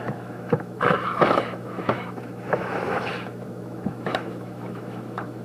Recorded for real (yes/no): no